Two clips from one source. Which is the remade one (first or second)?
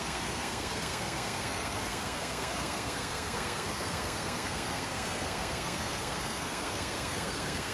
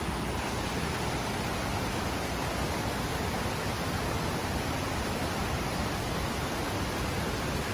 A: first